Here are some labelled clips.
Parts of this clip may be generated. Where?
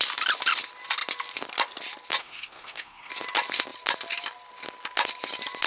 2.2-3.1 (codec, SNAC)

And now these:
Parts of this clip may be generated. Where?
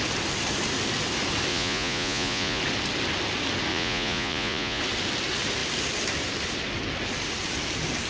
1.5-2.6 (vocoder, Vocos); 3.7-4.8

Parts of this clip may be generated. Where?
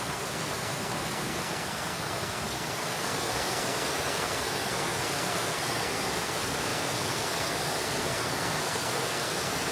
0.0-9.7 (codec, SNAC)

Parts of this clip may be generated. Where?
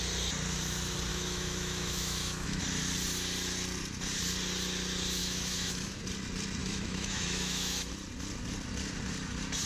1.1-2.6 (autoencoder, DAC-VAE); 5.2-6.0; 6.6-7.9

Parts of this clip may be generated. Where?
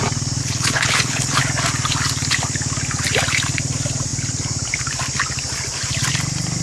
0.4-1.4 (codec, HILCodec)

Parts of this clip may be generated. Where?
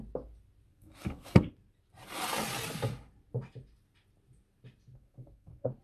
0.7-1.5 (codec, SNAC); 4.9-5.8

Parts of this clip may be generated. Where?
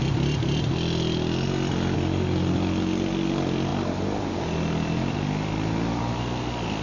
none